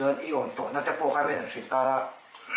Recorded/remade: remade